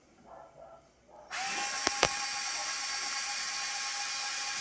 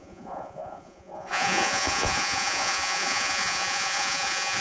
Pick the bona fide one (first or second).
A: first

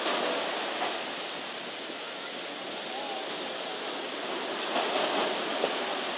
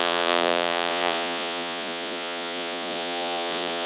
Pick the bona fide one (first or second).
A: first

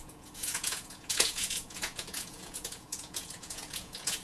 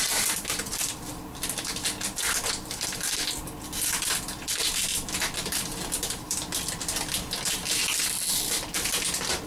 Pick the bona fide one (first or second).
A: second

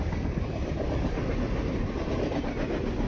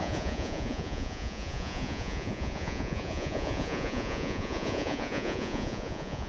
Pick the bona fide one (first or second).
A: first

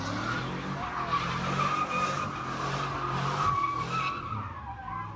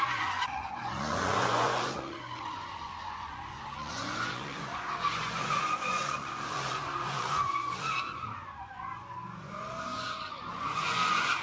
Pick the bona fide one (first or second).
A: first